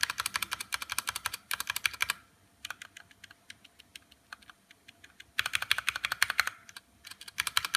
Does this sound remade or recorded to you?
recorded